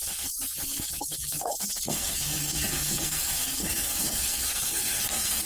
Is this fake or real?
fake